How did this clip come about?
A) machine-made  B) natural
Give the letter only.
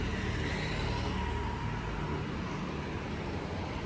B